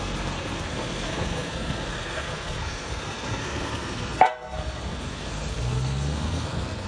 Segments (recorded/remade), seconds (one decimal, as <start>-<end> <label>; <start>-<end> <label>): 0.0-6.9 remade